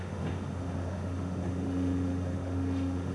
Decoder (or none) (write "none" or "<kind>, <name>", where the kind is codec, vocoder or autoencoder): autoencoder, DAC-VAE